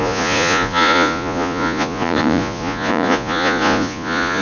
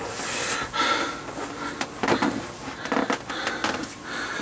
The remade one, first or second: first